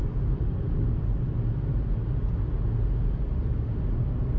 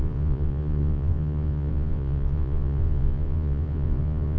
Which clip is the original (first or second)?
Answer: first